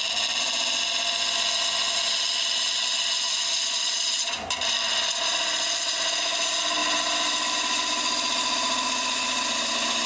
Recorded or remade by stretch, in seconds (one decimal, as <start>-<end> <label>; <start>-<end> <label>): 0.0-10.1 recorded